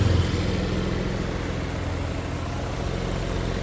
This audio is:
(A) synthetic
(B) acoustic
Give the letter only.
B